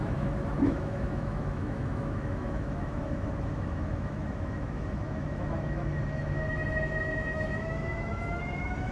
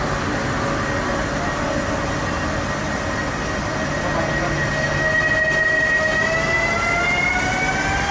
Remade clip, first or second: first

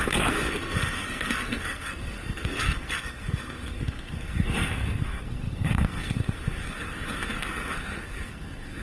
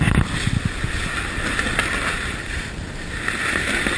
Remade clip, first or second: first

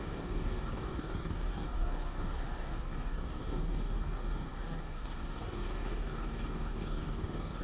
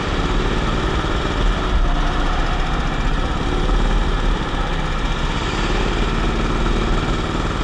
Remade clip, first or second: first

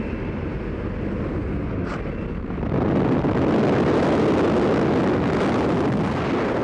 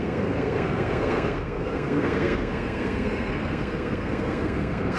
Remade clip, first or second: second